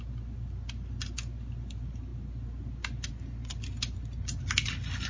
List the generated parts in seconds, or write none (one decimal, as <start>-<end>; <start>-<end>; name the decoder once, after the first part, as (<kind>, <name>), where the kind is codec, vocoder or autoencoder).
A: none